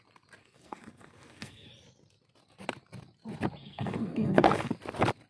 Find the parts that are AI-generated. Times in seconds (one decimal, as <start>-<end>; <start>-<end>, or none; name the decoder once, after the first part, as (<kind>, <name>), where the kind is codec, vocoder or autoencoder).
0.4-1.7 (codec, SNAC); 3.6-4.7